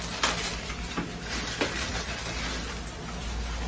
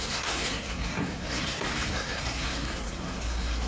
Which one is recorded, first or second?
first